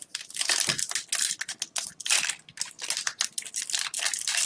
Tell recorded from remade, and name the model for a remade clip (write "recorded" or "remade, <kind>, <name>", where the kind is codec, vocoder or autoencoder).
recorded